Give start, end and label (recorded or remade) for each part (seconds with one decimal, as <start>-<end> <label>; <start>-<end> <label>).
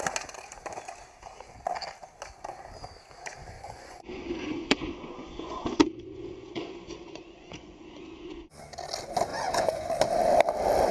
0.0-3.4 recorded; 3.4-8.6 remade; 8.6-9.3 recorded; 9.3-9.9 remade; 9.9-10.9 recorded